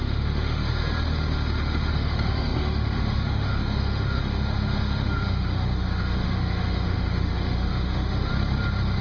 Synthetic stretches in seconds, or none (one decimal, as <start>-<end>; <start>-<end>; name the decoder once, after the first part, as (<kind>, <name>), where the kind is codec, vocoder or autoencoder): 0.0-0.8 (autoencoder, DAC-VAE); 1.6-8.3